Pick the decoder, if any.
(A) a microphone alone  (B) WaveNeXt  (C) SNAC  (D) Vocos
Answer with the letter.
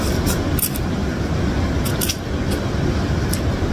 A